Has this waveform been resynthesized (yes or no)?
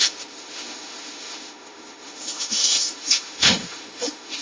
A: yes